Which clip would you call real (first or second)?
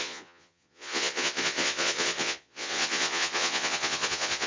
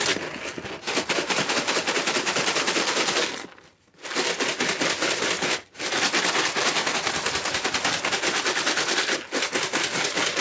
second